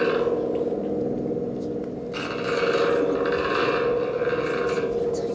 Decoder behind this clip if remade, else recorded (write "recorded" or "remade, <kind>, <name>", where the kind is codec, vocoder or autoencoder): recorded